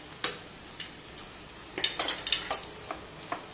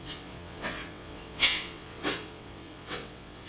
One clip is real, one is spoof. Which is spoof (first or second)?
second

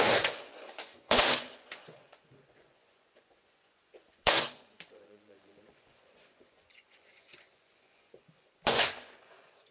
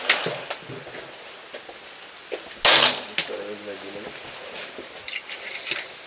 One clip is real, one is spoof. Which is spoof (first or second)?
first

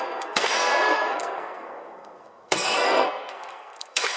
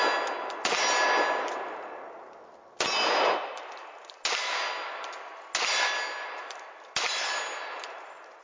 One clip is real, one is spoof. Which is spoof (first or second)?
first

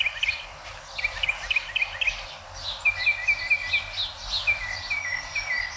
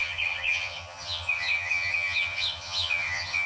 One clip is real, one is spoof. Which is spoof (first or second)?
second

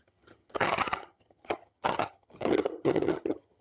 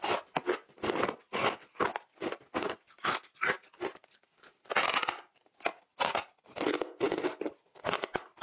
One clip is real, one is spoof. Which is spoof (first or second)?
first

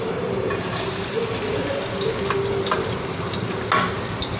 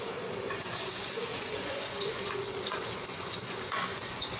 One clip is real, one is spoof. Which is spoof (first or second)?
second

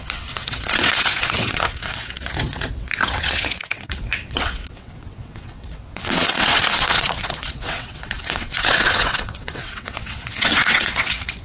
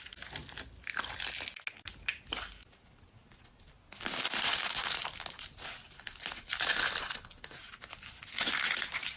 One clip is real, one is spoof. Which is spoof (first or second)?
first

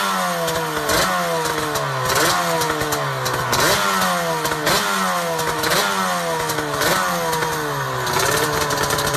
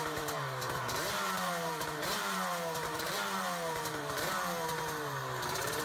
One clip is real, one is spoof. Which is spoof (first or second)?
second